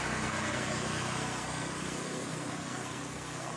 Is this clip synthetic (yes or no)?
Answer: yes